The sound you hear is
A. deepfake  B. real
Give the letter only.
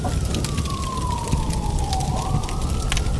B